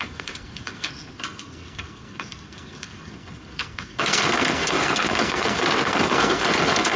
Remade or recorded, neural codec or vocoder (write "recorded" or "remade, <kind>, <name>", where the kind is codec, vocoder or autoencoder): remade, codec, SNAC